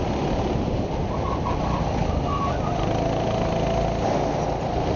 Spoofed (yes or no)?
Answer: no